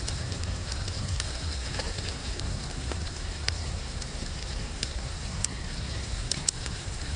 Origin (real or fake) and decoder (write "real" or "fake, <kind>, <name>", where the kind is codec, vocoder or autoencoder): fake, codec, SNAC